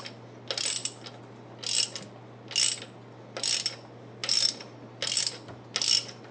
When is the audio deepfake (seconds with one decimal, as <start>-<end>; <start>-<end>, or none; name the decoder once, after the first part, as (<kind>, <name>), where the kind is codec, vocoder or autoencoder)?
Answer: none